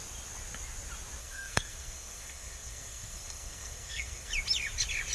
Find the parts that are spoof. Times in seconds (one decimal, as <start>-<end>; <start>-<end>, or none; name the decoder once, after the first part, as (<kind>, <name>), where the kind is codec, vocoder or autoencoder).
1.2-4.3 (codec, SNAC)

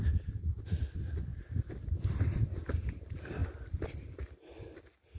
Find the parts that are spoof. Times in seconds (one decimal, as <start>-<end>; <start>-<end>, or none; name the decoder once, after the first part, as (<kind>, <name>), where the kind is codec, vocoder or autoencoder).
none